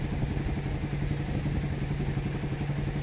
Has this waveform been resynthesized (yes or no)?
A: no